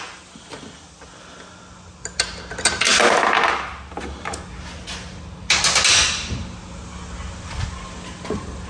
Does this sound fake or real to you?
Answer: real